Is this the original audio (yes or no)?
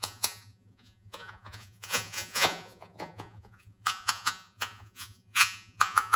no